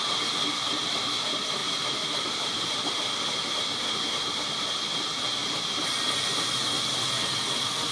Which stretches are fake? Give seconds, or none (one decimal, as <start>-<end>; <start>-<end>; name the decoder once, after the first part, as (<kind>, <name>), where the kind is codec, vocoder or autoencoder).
1.6-4.2 (vocoder, BigVGAN v2); 5.4-6.5